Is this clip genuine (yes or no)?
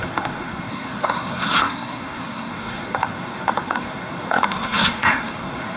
no